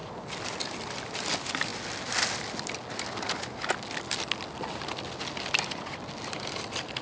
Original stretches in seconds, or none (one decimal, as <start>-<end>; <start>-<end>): 0.0-7.0